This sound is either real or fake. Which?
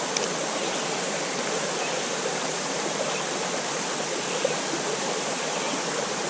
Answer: real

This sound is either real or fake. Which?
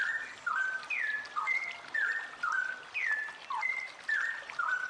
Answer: real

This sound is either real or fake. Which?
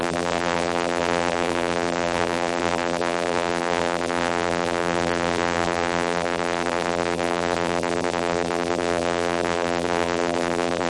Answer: fake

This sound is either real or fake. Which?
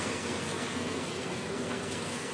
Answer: fake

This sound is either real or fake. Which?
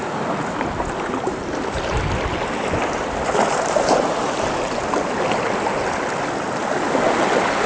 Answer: real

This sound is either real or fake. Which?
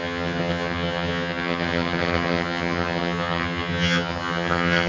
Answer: fake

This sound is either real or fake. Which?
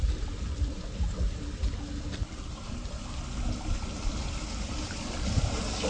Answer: real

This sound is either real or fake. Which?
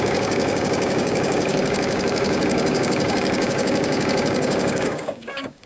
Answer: fake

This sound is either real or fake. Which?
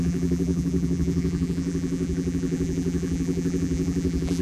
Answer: fake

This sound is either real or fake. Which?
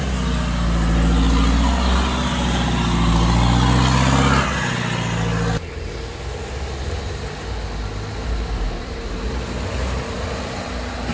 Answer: real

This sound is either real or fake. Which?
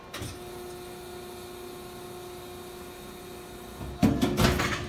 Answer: real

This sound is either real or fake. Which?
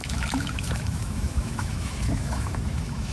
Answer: fake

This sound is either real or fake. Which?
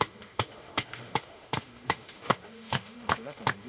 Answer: fake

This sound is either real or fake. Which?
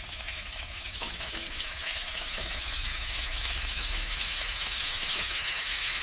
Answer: fake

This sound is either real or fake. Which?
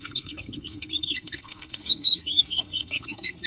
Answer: fake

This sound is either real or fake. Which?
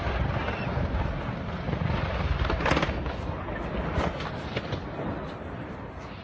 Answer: real